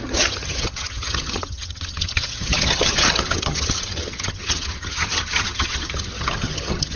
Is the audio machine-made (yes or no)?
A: yes